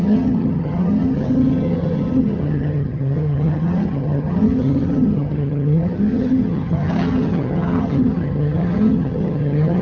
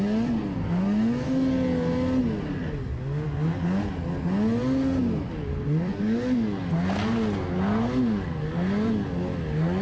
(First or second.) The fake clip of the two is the first